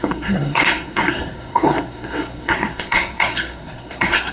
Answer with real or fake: fake